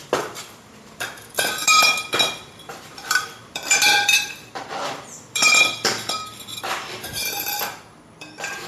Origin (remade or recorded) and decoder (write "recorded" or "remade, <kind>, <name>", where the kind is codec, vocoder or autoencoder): remade, vocoder, BigVGAN v2